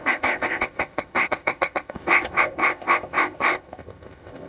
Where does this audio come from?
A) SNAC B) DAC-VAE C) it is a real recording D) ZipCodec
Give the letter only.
D